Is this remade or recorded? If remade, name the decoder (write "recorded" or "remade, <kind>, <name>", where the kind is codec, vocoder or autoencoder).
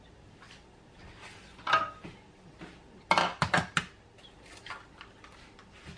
recorded